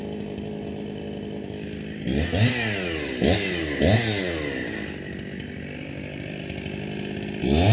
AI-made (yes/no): no